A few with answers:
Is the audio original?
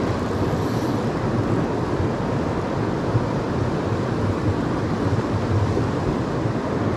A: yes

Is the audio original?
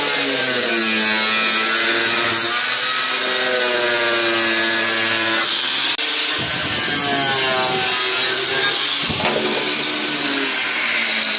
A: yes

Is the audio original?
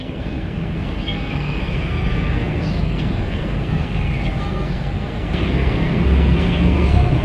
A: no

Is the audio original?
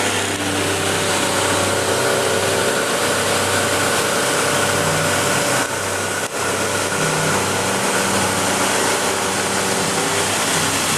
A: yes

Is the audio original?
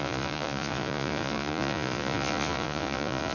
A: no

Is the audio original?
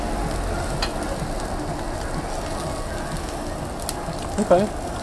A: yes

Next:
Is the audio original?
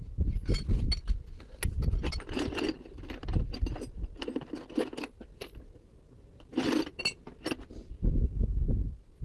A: yes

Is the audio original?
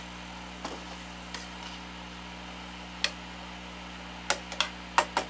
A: yes